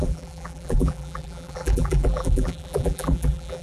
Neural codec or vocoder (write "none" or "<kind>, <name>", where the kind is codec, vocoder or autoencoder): vocoder, BigVGAN v2